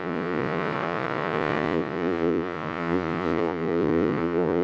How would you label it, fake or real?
fake